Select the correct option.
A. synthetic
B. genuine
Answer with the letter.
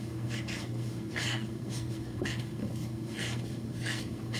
A